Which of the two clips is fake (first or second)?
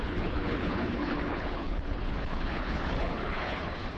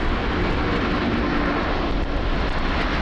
first